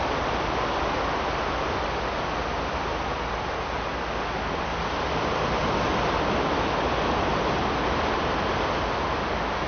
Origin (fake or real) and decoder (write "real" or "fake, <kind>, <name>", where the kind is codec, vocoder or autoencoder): real